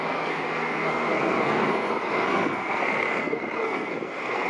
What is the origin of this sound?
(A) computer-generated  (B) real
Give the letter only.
A